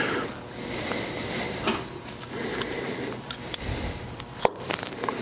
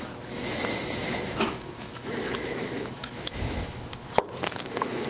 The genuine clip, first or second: first